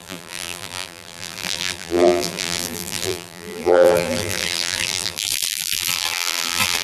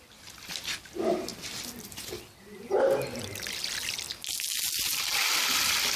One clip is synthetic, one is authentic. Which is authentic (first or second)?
second